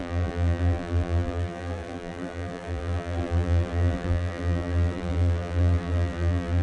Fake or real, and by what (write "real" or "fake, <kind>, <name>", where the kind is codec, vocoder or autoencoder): fake, vocoder, BigVGAN v2